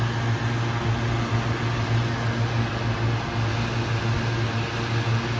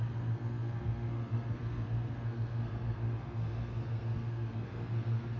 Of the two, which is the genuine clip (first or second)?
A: first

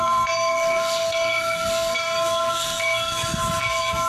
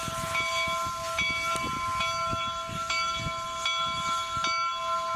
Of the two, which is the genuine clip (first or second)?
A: second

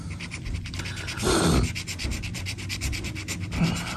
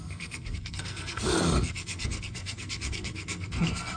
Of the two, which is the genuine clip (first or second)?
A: first